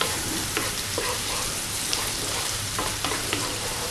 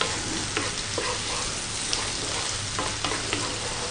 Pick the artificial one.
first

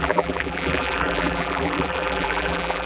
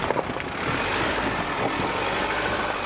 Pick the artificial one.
first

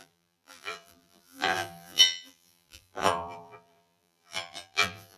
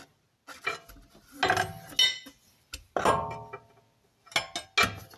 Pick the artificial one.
first